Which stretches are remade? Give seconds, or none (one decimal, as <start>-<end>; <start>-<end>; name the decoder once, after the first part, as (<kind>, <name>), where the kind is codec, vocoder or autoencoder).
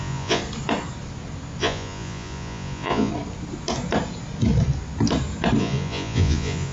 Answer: 0.0-0.4 (vocoder, Vocos); 1.6-3.1; 5.6-6.7